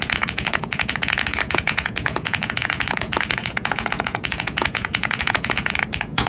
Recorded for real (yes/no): no